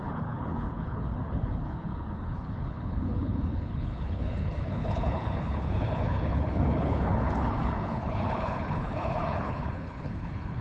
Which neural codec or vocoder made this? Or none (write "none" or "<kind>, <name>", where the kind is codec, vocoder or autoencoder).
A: codec, HILCodec